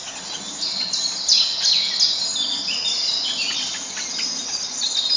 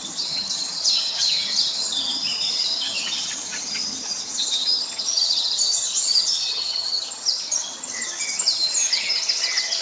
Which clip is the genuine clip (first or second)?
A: first